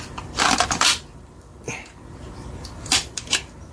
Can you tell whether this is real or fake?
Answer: fake